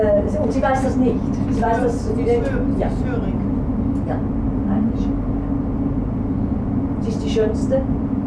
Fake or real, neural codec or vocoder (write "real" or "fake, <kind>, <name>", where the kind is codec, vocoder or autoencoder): real